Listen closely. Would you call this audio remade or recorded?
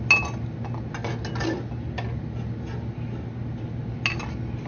recorded